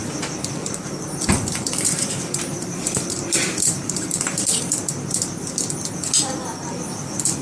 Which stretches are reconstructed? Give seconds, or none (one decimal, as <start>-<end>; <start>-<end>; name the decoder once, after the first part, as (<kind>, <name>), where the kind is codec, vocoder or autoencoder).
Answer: 0.6-4.9 (vocoder, BigVGAN v2)